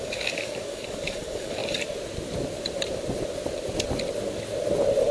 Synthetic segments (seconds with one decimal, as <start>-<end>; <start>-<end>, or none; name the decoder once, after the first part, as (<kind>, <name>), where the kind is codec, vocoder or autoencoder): 0.0-1.6 (codec, DAC)